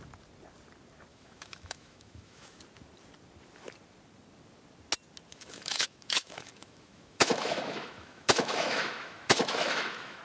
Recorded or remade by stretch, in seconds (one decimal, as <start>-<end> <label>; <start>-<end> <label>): 0.0-1.1 recorded; 1.1-2.6 remade; 2.6-5.3 recorded; 5.3-10.2 remade